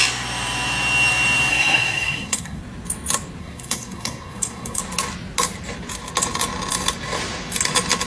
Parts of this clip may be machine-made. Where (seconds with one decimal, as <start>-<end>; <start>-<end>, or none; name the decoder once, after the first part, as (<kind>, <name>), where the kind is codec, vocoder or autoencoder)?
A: 1.5-2.6 (codec, SNAC); 3.4-4.8